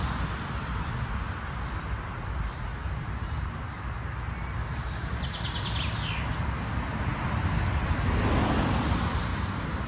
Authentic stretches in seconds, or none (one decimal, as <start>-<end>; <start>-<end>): 0.0-9.9